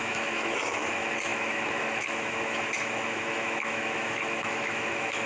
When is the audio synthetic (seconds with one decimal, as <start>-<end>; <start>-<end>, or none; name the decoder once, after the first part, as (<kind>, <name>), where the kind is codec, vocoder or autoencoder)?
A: 0.0-5.3 (autoencoder, DAC-VAE)